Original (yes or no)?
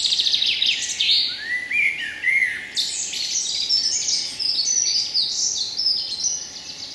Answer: yes